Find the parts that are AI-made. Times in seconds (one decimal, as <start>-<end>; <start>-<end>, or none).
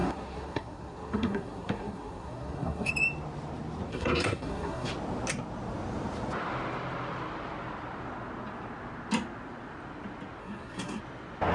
0.0-2.9; 3.9-4.9; 10.4-11.0